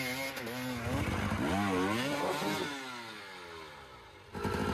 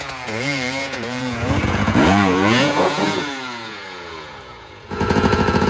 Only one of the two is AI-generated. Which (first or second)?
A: second